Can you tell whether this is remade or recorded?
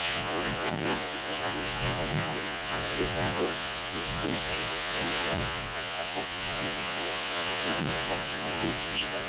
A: remade